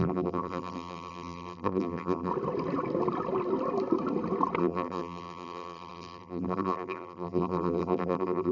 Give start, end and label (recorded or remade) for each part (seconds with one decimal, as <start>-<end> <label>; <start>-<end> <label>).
0.0-2.3 remade; 2.3-4.6 recorded; 4.6-8.5 remade